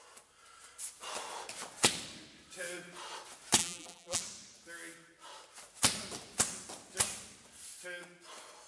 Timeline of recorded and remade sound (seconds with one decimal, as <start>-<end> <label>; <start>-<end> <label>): 0.0-3.6 recorded; 3.6-4.2 remade; 4.2-8.7 recorded